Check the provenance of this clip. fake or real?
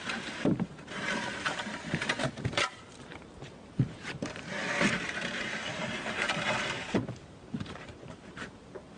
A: fake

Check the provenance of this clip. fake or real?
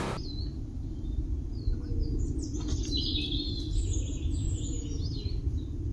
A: real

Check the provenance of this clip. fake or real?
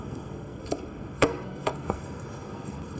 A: fake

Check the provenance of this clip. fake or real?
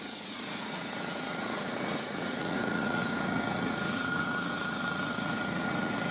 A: fake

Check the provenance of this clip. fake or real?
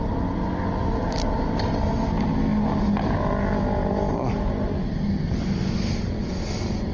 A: real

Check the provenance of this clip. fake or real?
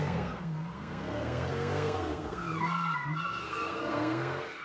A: fake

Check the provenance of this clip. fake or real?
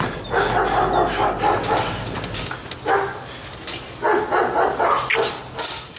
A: real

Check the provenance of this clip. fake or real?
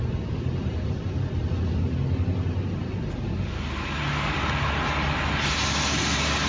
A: real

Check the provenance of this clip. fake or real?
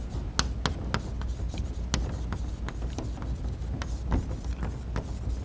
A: real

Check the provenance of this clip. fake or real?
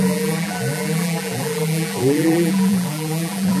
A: fake